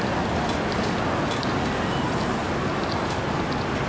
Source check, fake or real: real